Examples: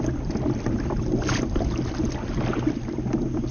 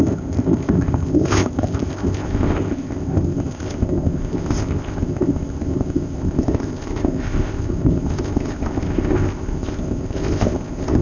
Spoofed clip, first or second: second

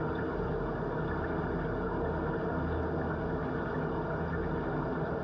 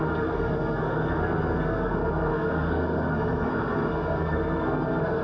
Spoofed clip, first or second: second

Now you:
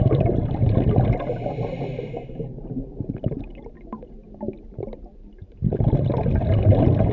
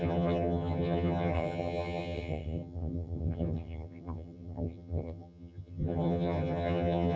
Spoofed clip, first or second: second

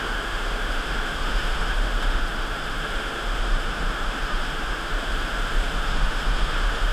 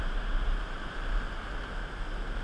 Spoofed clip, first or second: first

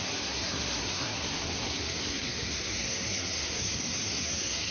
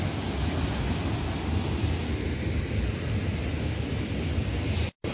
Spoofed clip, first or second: first